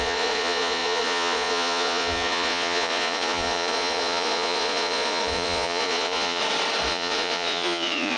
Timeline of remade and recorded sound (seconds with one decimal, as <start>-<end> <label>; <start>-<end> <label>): 0.0-6.4 remade; 6.4-6.9 recorded; 6.9-8.2 remade